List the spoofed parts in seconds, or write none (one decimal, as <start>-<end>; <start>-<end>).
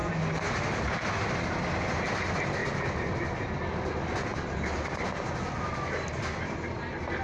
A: 1.4-2.6; 6.7-7.2